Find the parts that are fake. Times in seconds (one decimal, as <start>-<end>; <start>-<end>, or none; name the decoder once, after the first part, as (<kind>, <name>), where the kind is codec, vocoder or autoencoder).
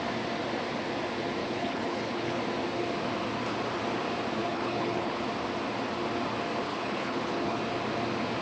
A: 1.4-2.4 (codec, HILCodec); 4.4-5.2; 6.7-7.6